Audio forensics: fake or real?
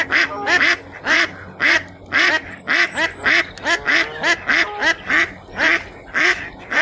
real